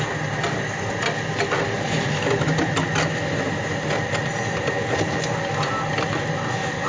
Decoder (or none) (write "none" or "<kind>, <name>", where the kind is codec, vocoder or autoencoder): none